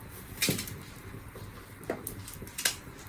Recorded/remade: recorded